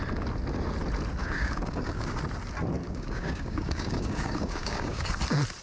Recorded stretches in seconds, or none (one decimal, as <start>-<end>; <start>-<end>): 0.0-1.2; 2.2-2.8; 5.1-5.6